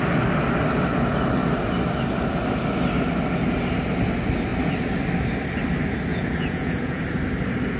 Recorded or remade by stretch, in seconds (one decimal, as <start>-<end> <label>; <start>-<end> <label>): 0.0-6.1 recorded; 6.1-7.0 remade; 7.0-7.8 recorded